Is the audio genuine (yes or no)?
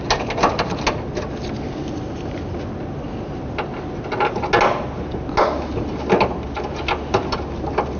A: yes